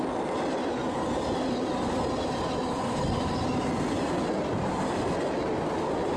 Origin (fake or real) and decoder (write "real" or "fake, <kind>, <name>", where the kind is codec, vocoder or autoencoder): real